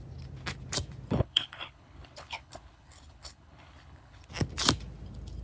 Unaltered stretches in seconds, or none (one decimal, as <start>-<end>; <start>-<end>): 0.0-1.1; 4.3-5.4